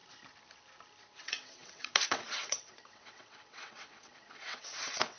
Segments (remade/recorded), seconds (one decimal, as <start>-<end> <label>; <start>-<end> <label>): 0.0-1.2 recorded; 1.2-5.2 remade